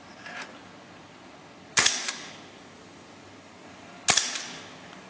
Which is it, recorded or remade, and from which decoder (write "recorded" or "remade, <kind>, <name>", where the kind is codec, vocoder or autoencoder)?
recorded